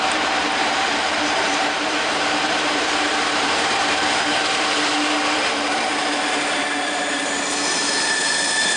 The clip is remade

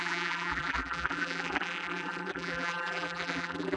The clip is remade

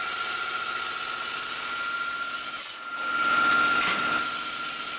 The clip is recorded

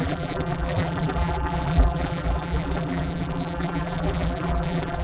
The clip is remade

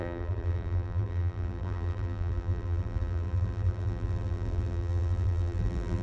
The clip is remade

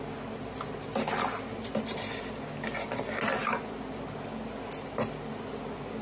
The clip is recorded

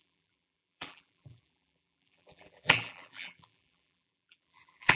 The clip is remade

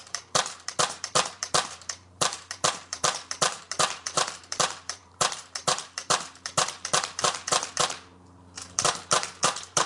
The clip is remade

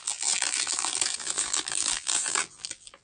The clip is remade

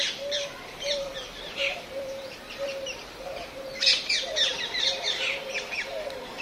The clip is remade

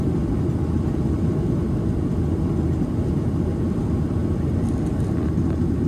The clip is recorded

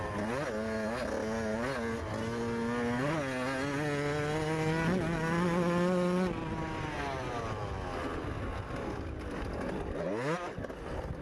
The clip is recorded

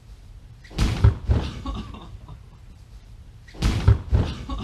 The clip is remade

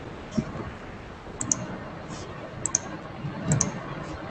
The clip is recorded